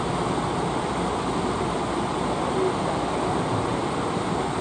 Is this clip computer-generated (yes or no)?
no